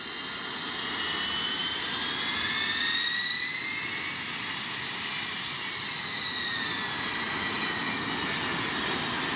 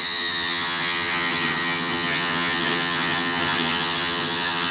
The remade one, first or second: second